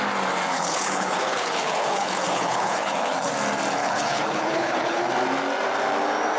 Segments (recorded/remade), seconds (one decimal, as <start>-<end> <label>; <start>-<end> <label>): 0.0-0.5 recorded; 0.5-3.3 remade; 3.3-3.8 recorded; 3.8-5.1 remade; 5.1-6.4 recorded